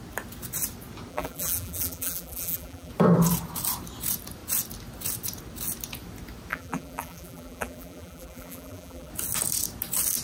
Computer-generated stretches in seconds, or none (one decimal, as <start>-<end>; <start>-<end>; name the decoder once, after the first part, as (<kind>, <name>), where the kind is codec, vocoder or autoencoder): 1.1-2.9 (vocoder, BigVGAN v2); 6.5-9.1